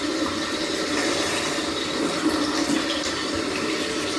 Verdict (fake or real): real